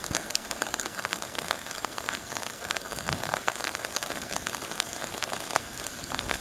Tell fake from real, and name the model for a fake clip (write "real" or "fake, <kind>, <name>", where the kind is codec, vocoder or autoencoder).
fake, codec, SNAC